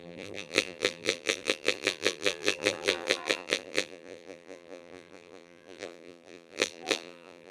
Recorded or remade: remade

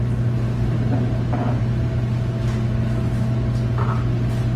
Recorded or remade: recorded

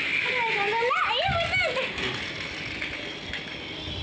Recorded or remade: recorded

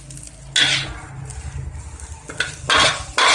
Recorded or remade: recorded